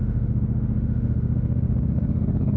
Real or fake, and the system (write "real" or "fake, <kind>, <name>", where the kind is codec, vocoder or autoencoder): fake, autoencoder, DAC-VAE